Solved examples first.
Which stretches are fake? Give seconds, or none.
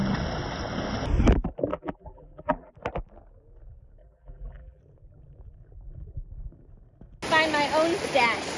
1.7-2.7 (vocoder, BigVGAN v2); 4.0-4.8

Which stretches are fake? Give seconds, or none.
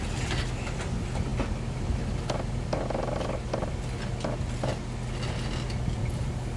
none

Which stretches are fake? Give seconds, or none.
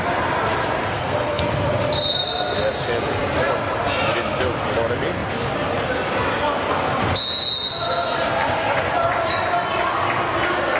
0.8-1.4 (codec, SNAC)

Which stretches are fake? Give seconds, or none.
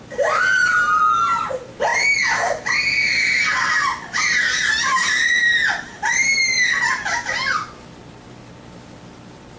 0.0-0.7 (vocoder, BigVGAN v2); 1.5-6.5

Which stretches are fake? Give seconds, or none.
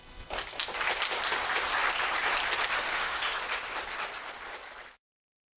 2.8-3.2 (autoencoder, DAC-VAE); 5.1-5.6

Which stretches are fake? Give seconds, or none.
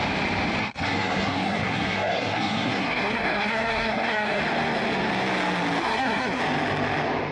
0.6-4.4 (codec, SNAC); 5.8-6.4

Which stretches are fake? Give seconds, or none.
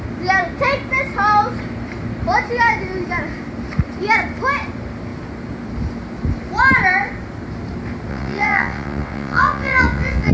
8.1-10.3 (vocoder, WaveNeXt)